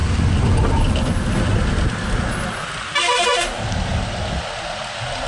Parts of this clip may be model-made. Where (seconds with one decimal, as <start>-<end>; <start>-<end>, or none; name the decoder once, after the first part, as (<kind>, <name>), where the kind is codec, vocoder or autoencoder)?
none